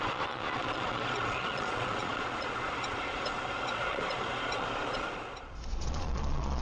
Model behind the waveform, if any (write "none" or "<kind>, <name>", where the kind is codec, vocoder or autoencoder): vocoder, Vocos